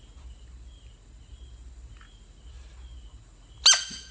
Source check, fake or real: real